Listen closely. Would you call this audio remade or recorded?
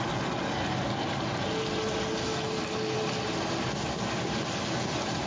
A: recorded